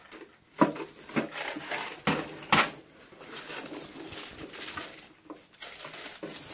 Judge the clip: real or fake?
real